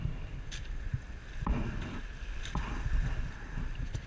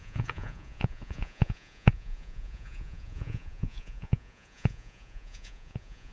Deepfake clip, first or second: second